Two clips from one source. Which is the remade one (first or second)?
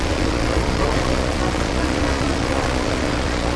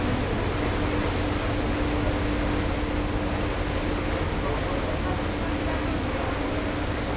first